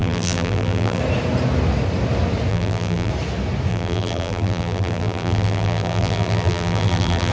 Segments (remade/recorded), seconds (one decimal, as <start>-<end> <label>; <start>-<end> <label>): 0.0-1.0 remade; 1.0-2.5 recorded; 2.5-3.1 remade; 3.1-3.7 recorded; 3.7-7.3 remade